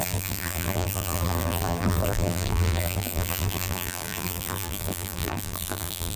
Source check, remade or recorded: remade